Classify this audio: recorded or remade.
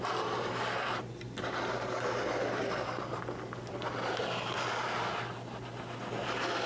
recorded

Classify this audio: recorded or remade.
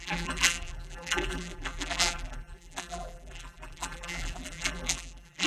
remade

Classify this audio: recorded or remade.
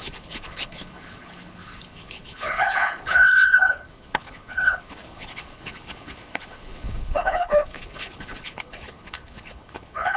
remade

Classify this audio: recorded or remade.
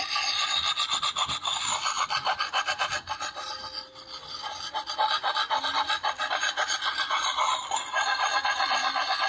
recorded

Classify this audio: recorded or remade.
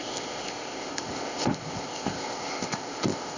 remade